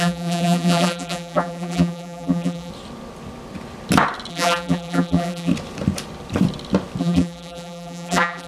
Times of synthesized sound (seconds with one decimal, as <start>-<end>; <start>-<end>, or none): 0.0-2.7; 4.3-5.5; 7.0-8.5